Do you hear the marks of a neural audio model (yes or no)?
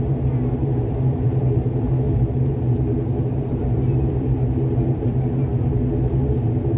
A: yes